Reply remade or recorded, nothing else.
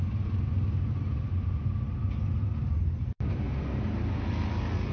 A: recorded